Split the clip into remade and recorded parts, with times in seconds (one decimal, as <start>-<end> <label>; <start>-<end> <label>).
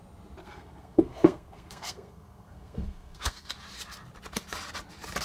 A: 0.0-0.4 recorded; 0.4-3.5 remade; 3.5-5.2 recorded